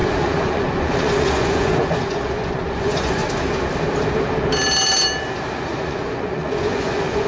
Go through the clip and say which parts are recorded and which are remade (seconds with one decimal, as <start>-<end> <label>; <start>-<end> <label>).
0.0-3.2 remade; 3.2-5.6 recorded; 5.6-7.3 remade